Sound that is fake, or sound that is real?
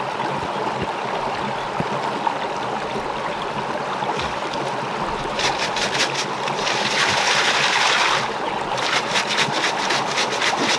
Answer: real